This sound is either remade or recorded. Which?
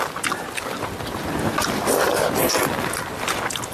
recorded